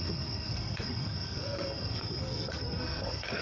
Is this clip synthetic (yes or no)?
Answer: yes